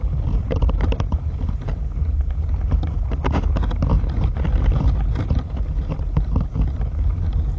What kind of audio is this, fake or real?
real